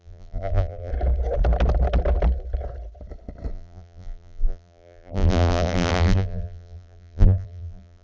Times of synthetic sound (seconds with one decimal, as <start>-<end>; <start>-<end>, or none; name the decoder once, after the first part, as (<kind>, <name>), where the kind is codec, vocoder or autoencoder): 0.0-0.9 (vocoder, BigVGAN v2); 3.5-8.0

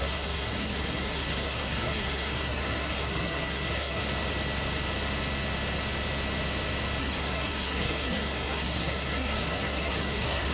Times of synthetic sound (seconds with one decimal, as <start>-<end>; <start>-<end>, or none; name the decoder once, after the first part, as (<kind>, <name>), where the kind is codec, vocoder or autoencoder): 0.0-4.0 (codec, SNAC); 7.0-10.5

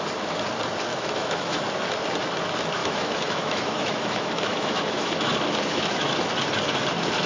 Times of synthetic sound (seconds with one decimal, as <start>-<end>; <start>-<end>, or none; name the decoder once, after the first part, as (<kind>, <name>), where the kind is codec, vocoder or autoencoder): 0.9-1.6 (autoencoder, DAC-VAE); 2.8-5.3; 5.7-6.3

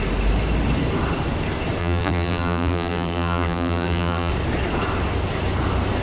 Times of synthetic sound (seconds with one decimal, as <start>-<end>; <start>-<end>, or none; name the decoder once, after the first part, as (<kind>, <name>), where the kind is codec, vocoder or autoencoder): 1.8-4.3 (vocoder, BigVGAN v2)

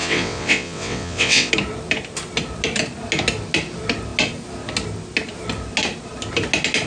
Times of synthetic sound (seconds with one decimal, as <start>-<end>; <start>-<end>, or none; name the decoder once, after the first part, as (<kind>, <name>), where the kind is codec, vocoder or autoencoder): 0.0-1.5 (vocoder, WaveNeXt)

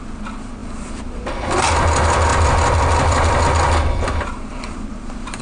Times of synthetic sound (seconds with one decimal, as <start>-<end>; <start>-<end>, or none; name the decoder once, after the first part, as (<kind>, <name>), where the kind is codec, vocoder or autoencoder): 0.6-1.3 (vocoder, BigVGAN v2); 2.3-3.4; 3.8-5.4